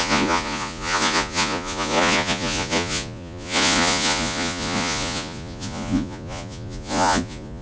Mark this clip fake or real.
fake